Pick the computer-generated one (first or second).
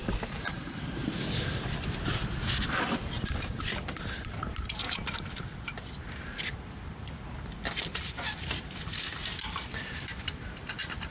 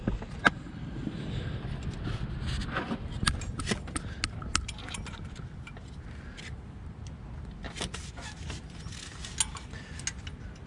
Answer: first